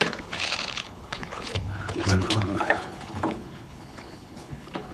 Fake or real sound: fake